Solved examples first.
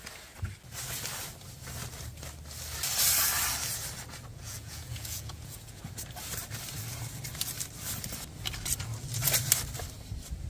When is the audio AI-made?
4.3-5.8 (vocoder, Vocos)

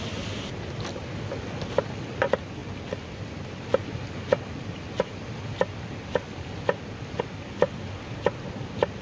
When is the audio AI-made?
none

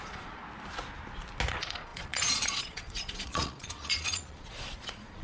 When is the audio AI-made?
0.0-0.4 (vocoder, Vocos); 1.5-5.2

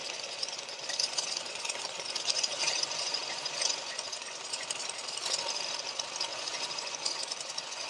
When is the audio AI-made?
0.0-4.7 (vocoder, Vocos); 6.3-7.9

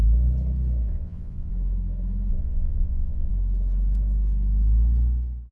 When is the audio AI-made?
0.9-1.5 (vocoder, Vocos); 2.3-3.3

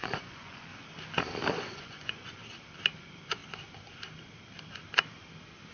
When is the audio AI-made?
0.0-0.7 (vocoder, Vocos); 1.5-2.4; 3.0-3.4